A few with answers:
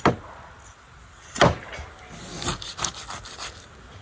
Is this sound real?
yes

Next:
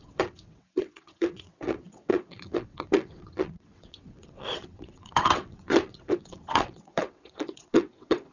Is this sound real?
no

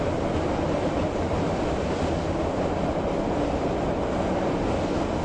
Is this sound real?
yes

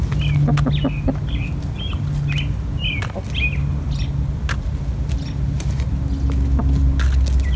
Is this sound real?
yes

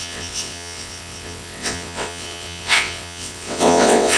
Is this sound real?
no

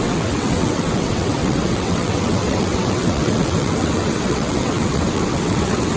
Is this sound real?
no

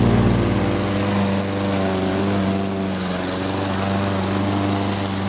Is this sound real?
yes